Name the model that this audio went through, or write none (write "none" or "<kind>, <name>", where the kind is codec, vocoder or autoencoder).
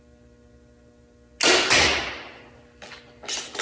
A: none